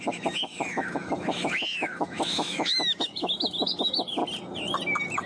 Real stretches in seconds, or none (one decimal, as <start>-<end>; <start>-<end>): 4.2-5.3